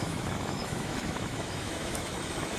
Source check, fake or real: fake